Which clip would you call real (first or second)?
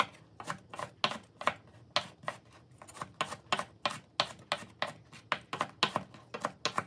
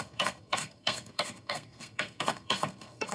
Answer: first